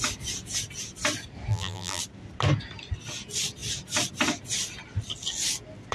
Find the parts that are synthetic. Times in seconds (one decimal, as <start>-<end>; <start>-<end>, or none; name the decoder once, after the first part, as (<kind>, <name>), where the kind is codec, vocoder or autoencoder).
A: 1.5-2.0 (vocoder, BigVGAN v2)